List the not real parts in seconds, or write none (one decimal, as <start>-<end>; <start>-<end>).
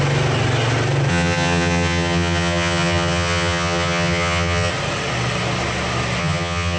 1.1-4.7; 6.2-6.8